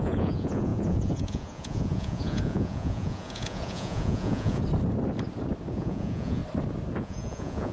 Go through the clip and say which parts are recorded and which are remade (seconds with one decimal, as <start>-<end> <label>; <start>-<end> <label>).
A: 0.0-4.6 remade; 4.6-5.7 recorded; 5.7-6.4 remade; 6.4-7.0 recorded; 7.0-7.7 remade